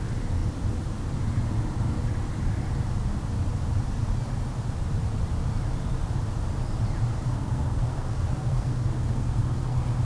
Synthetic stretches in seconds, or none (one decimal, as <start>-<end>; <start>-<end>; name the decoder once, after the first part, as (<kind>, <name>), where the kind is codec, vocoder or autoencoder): 7.1-10.0 (codec, SNAC)